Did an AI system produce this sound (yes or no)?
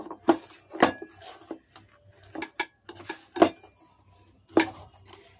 no